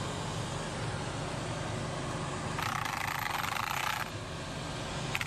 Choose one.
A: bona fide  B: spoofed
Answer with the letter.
A